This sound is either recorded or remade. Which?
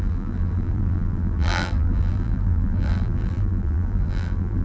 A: remade